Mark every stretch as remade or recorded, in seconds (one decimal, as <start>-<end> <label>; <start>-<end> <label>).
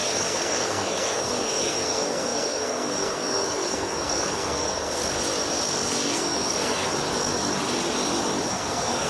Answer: 0.0-5.0 remade; 5.0-5.9 recorded; 5.9-6.9 remade; 6.9-8.5 recorded; 8.5-9.1 remade